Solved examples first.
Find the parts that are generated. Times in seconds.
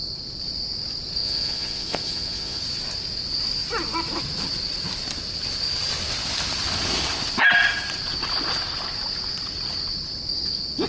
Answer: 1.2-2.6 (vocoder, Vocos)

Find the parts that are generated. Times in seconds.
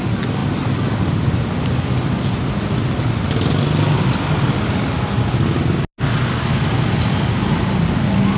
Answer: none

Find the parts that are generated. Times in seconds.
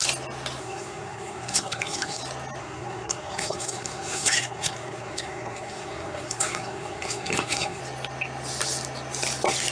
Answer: 0.6-2.2 (codec, SNAC); 2.6-7.8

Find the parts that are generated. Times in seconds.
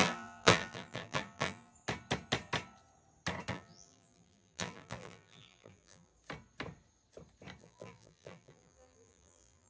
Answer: 0.0-1.7 (vocoder, BigVGAN v2); 3.5-6.1; 7.6-9.7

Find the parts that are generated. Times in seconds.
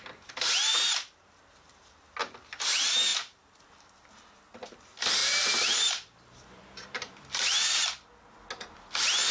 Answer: 3.1-3.6 (vocoder, BigVGAN v2); 5.2-7.8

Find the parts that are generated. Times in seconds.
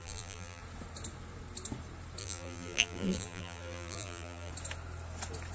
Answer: 0.0-0.6 (vocoder, BigVGAN v2); 2.2-4.5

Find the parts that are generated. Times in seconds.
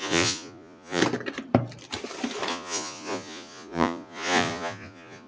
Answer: 0.0-1.0 (vocoder, Vocos); 2.5-5.3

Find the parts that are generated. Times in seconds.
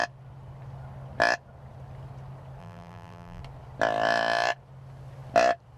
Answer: 2.6-3.4 (vocoder, BigVGAN v2)